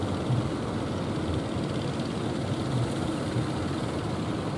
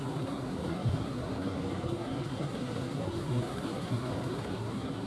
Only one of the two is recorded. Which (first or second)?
first